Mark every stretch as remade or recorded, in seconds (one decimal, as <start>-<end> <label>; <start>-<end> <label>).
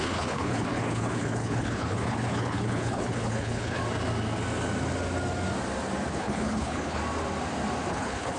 0.0-3.8 remade; 3.8-6.1 recorded; 6.1-7.0 remade; 7.0-7.9 recorded; 7.9-8.4 remade